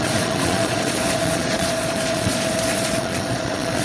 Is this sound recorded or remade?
remade